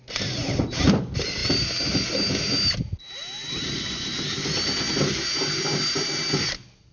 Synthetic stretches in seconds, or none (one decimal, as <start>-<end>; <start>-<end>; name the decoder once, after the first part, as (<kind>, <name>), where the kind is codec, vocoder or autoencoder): none